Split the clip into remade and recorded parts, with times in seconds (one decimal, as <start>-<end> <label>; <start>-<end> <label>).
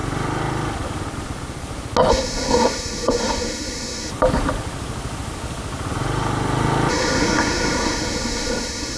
0.0-2.1 recorded; 2.1-4.1 remade; 4.1-6.9 recorded; 6.9-9.0 remade